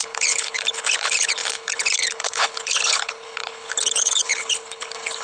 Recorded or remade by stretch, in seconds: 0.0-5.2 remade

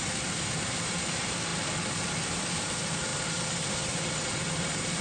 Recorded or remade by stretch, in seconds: 0.0-1.5 remade; 1.5-2.6 recorded; 2.6-5.0 remade

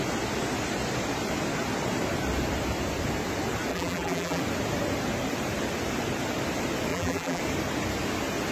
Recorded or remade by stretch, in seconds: 0.0-3.7 recorded; 3.7-4.4 remade; 4.4-6.9 recorded; 6.9-7.4 remade; 7.4-8.5 recorded